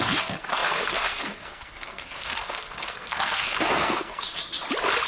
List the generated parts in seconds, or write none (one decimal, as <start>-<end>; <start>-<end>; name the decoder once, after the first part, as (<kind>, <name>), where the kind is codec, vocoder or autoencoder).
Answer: 0.0-4.4 (codec, SNAC)